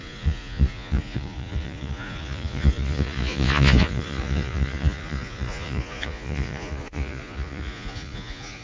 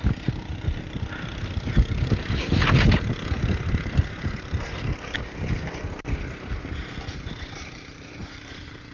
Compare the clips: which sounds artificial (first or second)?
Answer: first